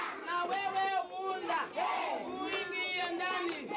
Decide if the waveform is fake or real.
real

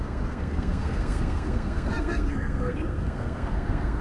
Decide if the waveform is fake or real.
fake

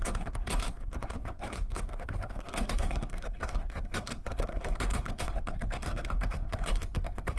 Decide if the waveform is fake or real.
fake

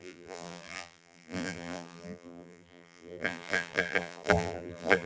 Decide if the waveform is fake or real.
fake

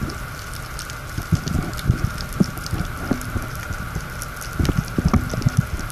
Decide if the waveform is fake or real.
real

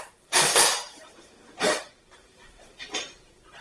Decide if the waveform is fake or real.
fake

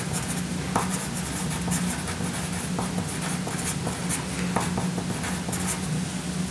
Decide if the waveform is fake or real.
real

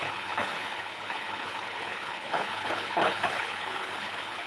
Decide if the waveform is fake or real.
fake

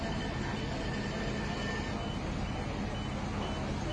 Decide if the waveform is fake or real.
real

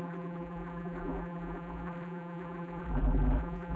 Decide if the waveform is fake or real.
fake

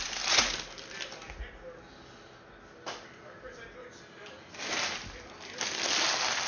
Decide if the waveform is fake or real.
real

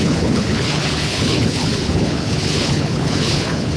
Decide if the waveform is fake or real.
fake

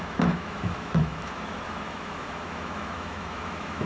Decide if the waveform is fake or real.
fake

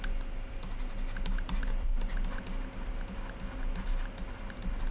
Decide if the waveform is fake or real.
real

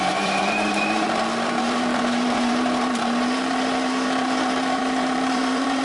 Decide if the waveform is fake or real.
fake